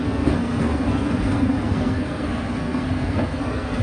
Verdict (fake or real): fake